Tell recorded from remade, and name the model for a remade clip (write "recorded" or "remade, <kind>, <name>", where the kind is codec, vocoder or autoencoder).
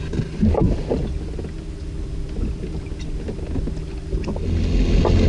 recorded